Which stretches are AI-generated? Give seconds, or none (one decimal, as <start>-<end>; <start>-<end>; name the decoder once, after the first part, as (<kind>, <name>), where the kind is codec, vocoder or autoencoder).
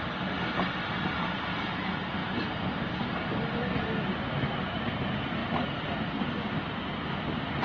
none